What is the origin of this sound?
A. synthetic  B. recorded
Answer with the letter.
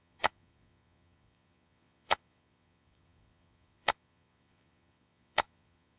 A